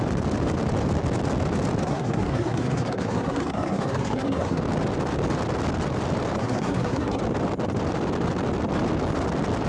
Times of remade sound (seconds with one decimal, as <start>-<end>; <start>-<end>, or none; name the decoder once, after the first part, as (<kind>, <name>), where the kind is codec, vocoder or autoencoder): 1.8-4.6 (codec, SNAC); 6.4-7.2